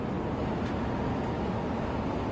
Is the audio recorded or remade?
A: recorded